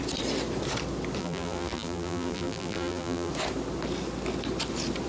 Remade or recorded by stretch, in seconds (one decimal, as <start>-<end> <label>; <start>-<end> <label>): 0.0-1.2 recorded; 1.2-3.3 remade; 3.3-5.1 recorded

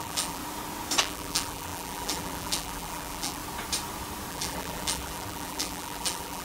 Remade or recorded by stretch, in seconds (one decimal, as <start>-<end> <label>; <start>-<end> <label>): 0.0-0.4 remade; 0.4-1.0 recorded; 1.0-3.4 remade; 3.4-4.3 recorded; 4.3-6.4 remade

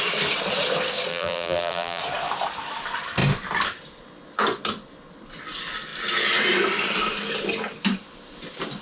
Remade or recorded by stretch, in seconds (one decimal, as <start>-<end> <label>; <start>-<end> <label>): 0.0-1.1 recorded; 1.1-2.0 remade; 2.0-8.8 recorded

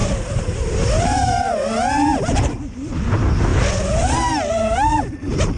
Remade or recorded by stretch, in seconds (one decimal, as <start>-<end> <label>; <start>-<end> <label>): 0.0-3.5 remade; 3.5-4.5 recorded; 4.5-5.6 remade